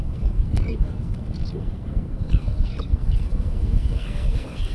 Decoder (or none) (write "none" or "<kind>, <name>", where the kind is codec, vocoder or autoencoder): codec, SNAC